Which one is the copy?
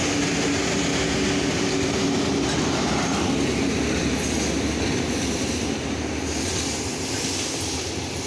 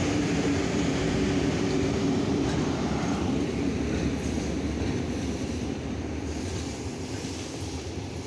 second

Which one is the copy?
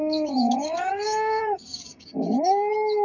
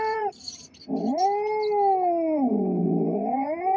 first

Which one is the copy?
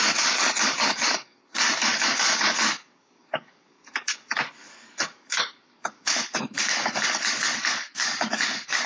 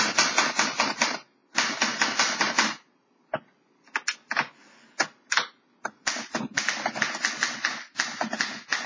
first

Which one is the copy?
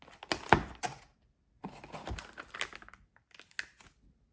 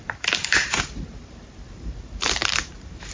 second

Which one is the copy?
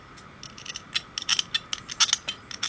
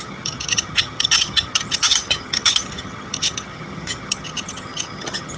second